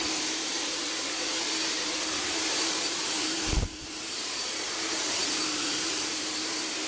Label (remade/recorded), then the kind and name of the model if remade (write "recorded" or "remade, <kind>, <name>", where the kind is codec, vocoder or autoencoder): remade, vocoder, BigVGAN v2